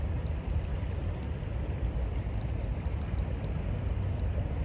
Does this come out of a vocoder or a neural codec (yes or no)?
no